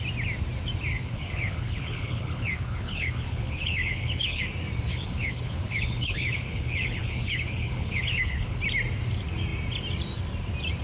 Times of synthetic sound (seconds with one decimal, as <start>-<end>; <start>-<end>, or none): 0.9-4.4; 4.9-8.6